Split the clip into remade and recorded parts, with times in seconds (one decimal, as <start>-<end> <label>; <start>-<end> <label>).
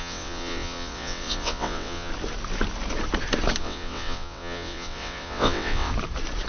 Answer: 0.0-2.1 remade; 2.1-3.6 recorded; 3.6-5.9 remade; 5.9-6.5 recorded